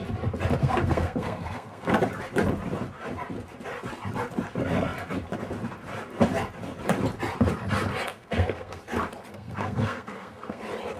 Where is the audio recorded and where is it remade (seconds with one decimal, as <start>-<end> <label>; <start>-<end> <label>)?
0.0-0.6 recorded; 0.6-1.9 remade; 1.9-8.1 recorded; 8.1-8.8 remade; 8.8-9.3 recorded; 9.3-10.6 remade; 10.6-11.0 recorded